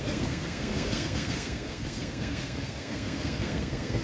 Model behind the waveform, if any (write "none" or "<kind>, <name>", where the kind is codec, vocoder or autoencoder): codec, SNAC